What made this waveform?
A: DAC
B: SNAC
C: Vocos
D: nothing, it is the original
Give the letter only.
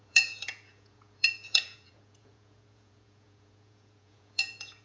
C